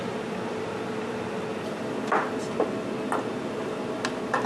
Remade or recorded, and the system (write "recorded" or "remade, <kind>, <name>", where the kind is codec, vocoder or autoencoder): recorded